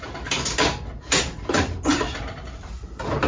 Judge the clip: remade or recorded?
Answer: recorded